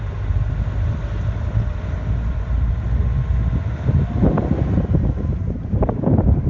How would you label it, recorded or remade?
recorded